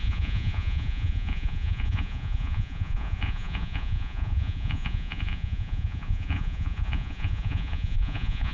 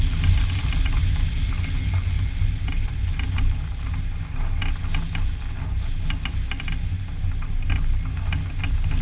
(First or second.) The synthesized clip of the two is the first